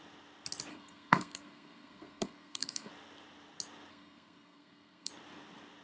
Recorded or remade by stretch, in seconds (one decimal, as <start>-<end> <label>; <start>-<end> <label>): 0.0-0.7 recorded; 0.7-2.9 remade; 2.9-3.9 recorded; 3.9-5.1 remade; 5.1-5.8 recorded